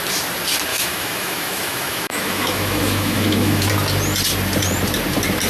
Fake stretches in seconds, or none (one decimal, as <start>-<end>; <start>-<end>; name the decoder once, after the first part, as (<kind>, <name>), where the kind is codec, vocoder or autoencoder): 0.7-3.7 (autoencoder, DAC-VAE)